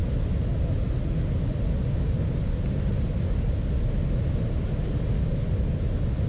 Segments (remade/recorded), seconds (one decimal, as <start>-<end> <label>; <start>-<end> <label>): 0.0-6.3 recorded